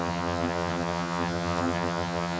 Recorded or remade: remade